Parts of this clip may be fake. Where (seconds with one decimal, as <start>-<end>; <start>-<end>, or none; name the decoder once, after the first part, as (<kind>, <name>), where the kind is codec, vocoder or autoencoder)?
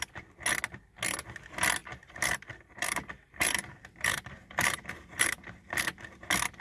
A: 1.8-5.8 (vocoder, BigVGAN v2)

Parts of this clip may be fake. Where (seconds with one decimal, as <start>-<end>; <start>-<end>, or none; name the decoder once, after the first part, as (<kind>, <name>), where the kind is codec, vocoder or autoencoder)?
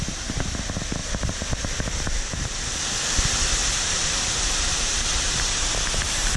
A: 1.0-2.2 (vocoder, BigVGAN v2); 3.6-6.4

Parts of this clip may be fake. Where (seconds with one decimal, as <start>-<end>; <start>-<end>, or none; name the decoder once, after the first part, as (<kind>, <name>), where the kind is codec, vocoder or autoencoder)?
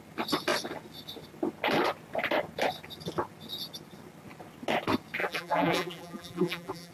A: 5.2-6.9 (vocoder, BigVGAN v2)